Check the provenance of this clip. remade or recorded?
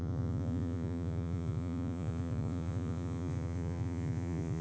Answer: remade